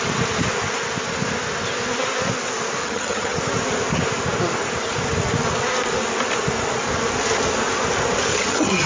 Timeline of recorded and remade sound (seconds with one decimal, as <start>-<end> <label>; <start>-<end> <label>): 0.0-2.8 recorded; 2.8-3.4 remade; 3.4-8.3 recorded; 8.3-8.9 remade